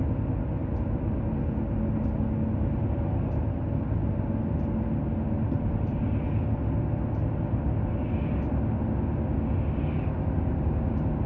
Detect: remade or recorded recorded